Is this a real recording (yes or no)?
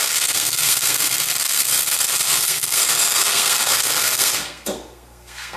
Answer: no